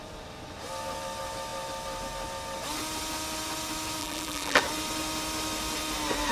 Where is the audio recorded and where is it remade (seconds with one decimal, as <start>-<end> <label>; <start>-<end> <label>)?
0.0-4.0 recorded; 4.0-4.6 remade; 4.6-6.3 recorded